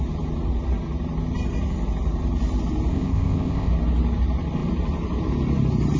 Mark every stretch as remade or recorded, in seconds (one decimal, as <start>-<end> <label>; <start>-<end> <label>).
0.0-2.9 recorded; 2.9-3.7 remade; 3.7-6.0 recorded